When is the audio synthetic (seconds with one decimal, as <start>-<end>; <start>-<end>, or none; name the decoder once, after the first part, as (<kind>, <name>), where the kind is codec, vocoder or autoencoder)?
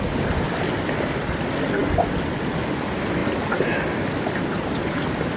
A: none